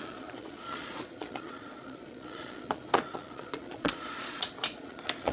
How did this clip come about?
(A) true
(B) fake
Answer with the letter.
B